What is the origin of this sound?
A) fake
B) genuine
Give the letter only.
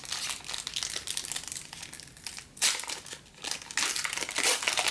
B